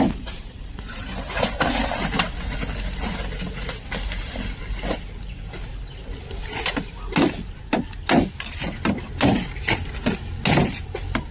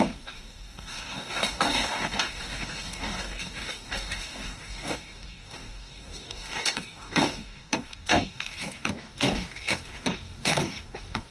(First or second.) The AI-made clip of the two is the second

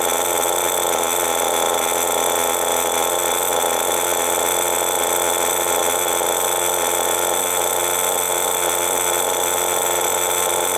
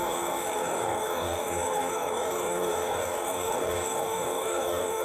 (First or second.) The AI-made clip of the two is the second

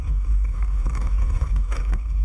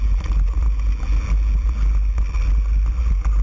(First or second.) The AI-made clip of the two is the first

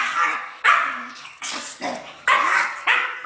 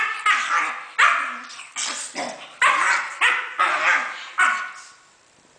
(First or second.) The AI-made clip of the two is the first